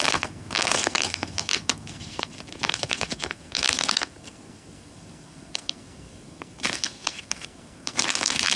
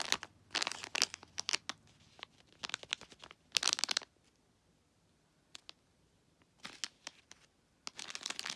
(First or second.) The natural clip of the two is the second